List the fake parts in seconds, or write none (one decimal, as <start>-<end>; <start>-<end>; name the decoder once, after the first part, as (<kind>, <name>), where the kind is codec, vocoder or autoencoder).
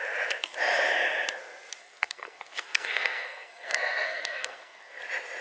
1.8-5.0 (codec, SNAC)